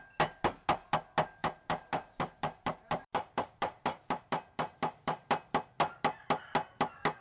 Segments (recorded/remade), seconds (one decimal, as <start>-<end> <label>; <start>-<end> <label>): 0.0-1.4 recorded; 1.4-5.3 remade; 5.3-7.2 recorded